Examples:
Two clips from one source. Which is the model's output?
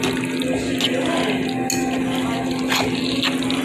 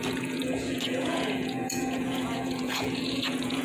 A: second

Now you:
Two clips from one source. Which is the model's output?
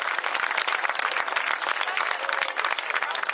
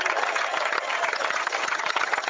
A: second